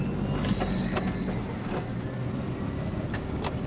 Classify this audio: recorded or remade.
recorded